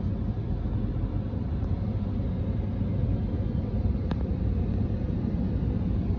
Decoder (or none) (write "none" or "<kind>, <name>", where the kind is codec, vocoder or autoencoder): none